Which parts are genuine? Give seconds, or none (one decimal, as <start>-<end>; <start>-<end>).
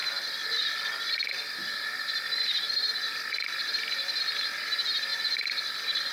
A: 0.0-5.1